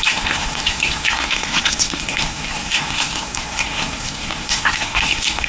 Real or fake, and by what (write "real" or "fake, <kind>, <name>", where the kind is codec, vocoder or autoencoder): fake, codec, SNAC